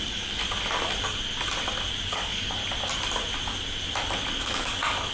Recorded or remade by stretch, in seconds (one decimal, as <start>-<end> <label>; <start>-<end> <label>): 0.0-0.4 remade; 0.4-2.1 recorded; 2.1-2.6 remade; 2.6-4.4 recorded; 4.4-5.1 remade